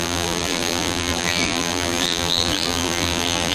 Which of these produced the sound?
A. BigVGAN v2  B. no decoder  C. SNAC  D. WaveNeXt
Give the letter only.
A